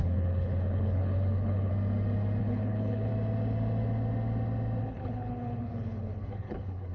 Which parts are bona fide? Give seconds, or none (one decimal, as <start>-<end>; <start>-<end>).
1.7-2.4; 3.1-4.8